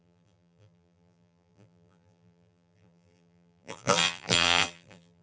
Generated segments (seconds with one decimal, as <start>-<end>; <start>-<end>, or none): 0.0-5.2